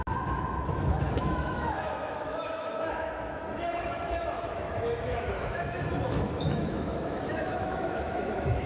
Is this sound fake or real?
fake